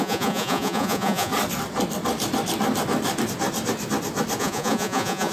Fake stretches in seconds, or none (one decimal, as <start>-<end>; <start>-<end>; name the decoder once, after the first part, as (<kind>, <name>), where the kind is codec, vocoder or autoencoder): 0.0-1.3 (vocoder, Vocos); 4.4-5.3